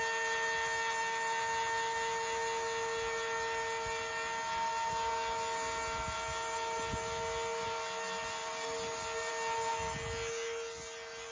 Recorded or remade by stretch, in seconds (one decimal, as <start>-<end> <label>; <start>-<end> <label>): 0.0-11.3 recorded